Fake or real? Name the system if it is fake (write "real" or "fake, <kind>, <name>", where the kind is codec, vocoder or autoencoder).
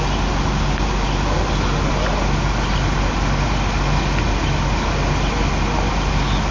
real